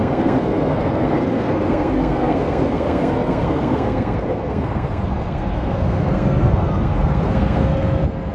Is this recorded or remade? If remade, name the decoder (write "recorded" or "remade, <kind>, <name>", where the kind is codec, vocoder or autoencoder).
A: remade, codec, SNAC